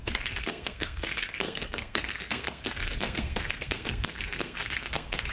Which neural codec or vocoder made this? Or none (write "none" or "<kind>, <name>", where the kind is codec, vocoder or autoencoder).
codec, SNAC